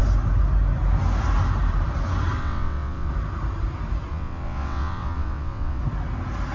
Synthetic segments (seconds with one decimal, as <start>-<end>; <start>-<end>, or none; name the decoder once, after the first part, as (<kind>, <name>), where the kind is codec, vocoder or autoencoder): 2.4-3.1 (vocoder, WaveNeXt); 4.1-5.8